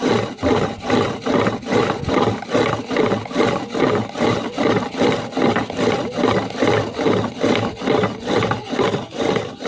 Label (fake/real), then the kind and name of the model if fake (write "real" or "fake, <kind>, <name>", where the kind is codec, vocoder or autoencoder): real